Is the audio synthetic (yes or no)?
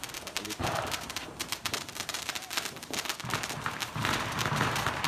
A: yes